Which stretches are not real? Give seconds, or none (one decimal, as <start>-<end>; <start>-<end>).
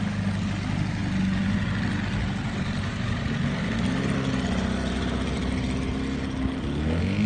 none